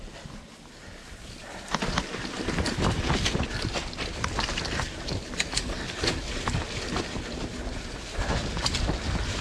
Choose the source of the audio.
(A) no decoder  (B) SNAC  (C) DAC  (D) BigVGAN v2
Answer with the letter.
A